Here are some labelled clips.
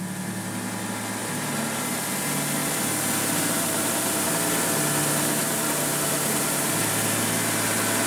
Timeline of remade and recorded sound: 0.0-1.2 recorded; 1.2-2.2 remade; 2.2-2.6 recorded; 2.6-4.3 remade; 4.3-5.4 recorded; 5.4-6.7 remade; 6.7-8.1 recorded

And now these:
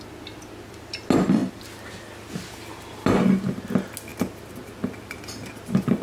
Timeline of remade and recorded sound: 0.0-6.0 recorded